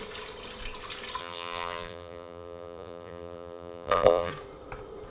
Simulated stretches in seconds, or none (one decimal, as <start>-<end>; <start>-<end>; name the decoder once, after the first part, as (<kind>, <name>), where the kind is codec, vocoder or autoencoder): 1.2-4.3 (vocoder, BigVGAN v2)